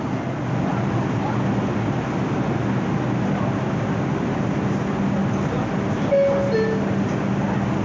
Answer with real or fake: real